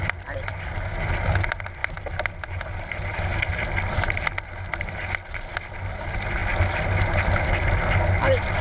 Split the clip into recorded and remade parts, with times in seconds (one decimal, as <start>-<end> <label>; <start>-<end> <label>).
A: 0.0-8.6 recorded